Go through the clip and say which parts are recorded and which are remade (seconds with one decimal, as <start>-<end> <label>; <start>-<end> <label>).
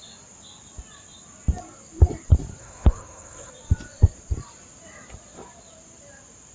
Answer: 0.0-2.6 recorded; 2.6-3.5 remade; 3.5-6.5 recorded